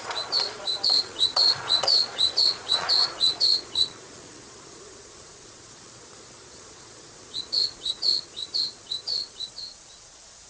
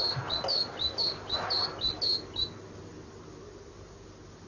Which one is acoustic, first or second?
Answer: second